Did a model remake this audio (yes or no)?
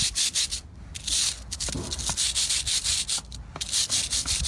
no